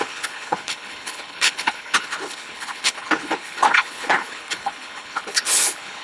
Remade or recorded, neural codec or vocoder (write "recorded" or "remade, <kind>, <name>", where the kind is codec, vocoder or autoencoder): remade, codec, HILCodec